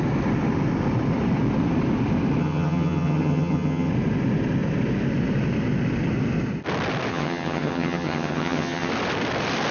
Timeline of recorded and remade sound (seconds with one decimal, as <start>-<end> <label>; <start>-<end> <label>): 0.0-2.4 recorded; 2.4-3.9 remade; 3.9-7.1 recorded; 7.1-8.9 remade; 8.9-9.7 recorded